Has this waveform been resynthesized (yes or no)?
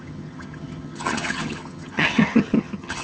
yes